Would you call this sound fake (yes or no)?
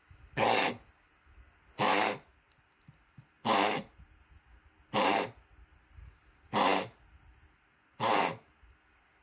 no